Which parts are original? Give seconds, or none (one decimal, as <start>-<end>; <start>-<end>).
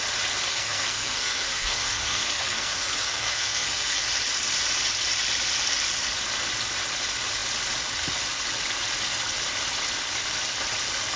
0.0-0.5; 4.0-11.2